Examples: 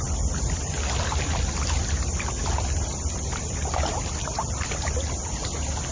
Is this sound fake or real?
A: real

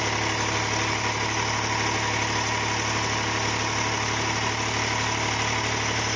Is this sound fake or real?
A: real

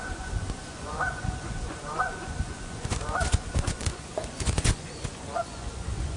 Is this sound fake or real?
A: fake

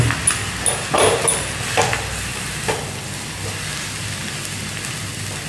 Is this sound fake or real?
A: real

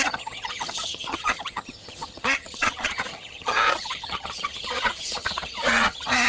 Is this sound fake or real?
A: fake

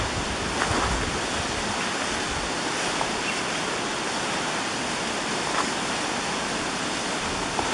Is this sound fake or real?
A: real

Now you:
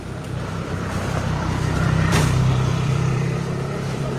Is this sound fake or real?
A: fake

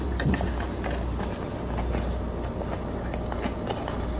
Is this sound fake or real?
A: real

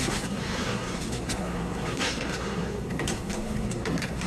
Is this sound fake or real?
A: fake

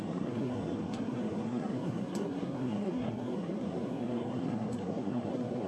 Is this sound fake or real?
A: fake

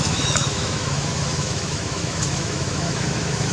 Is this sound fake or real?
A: fake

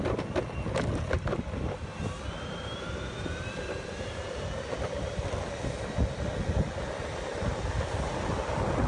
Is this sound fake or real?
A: real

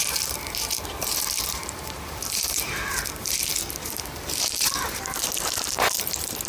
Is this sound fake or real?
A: fake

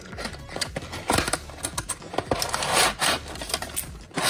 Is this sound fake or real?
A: real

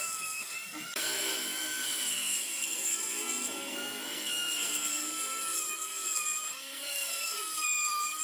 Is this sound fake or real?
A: fake